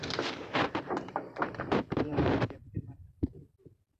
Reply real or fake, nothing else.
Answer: fake